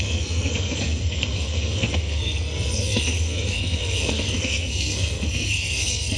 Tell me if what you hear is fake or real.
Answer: fake